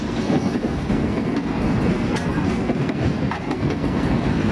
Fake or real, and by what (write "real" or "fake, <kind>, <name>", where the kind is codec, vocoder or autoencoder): fake, codec, SNAC